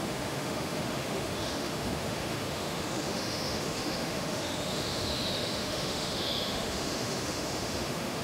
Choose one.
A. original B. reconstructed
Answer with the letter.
B